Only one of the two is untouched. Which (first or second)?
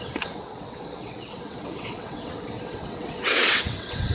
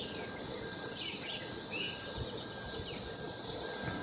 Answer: second